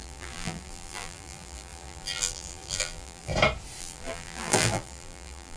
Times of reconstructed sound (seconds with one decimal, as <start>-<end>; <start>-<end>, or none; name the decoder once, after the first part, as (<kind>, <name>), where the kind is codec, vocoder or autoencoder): 0.0-3.3 (vocoder, BigVGAN v2); 3.8-5.6